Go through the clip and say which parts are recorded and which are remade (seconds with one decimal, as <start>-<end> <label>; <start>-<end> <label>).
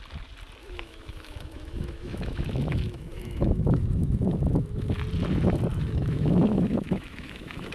0.0-0.6 recorded; 0.6-5.0 remade; 5.0-5.7 recorded; 5.7-7.7 remade